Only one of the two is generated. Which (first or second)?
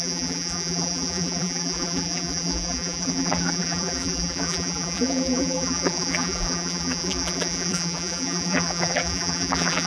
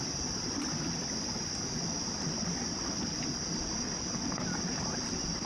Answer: first